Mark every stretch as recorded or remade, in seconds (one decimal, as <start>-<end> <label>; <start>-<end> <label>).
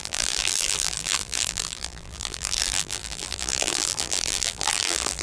0.0-5.2 remade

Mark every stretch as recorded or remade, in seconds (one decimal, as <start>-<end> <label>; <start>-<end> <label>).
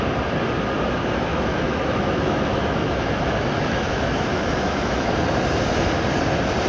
0.0-1.3 recorded; 1.3-5.1 remade; 5.1-6.7 recorded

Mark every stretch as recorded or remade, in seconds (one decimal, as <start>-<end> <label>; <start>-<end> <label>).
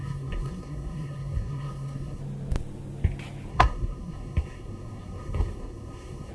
0.0-2.2 remade; 2.2-3.5 recorded; 3.5-6.3 remade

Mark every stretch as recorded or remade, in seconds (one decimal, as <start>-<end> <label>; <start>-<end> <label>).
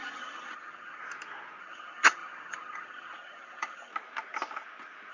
0.0-1.0 remade; 1.0-1.6 recorded; 1.6-3.9 remade; 3.9-5.1 recorded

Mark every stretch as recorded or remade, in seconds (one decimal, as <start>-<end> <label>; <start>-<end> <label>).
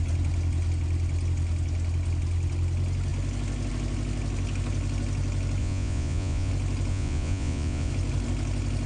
0.0-5.6 recorded; 5.6-6.5 remade; 6.5-6.9 recorded; 6.9-7.9 remade; 7.9-8.9 recorded